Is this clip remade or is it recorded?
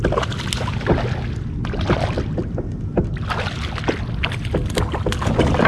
recorded